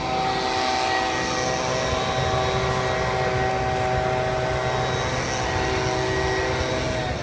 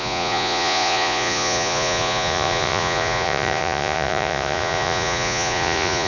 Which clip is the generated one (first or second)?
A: second